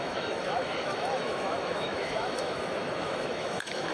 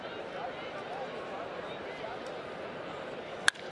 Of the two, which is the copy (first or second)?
first